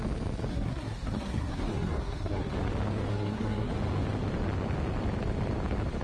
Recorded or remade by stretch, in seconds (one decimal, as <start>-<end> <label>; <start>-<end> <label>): 0.0-0.5 recorded; 0.5-2.5 remade; 2.5-3.1 recorded; 3.1-3.7 remade; 3.7-6.0 recorded